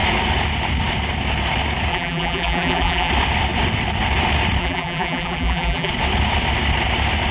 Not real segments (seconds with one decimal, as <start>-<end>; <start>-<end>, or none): 1.9-3.1; 4.6-5.9